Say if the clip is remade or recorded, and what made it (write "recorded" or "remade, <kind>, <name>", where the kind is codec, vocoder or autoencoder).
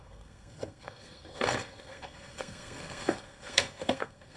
remade, codec, SNAC